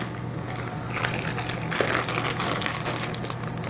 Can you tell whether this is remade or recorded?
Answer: recorded